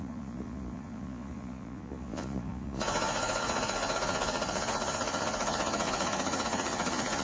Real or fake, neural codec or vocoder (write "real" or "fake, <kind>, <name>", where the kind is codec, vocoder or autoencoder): fake, vocoder, Vocos